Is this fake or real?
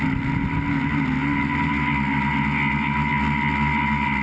real